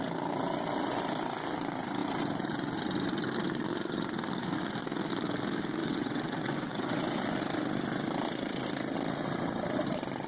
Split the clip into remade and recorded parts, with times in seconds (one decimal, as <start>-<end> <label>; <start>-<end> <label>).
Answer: 0.0-5.8 recorded; 5.8-7.0 remade; 7.0-10.3 recorded